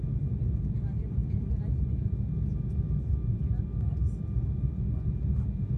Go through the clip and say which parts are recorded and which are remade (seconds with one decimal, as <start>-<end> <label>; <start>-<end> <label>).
0.0-5.8 recorded